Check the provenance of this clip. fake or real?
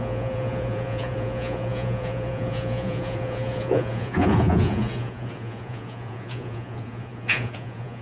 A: fake